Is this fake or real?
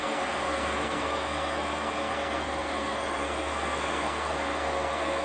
fake